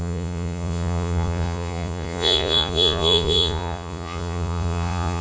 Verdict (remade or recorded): remade